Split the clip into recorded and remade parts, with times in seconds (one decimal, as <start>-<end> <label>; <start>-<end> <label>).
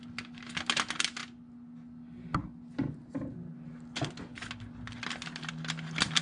0.0-6.2 recorded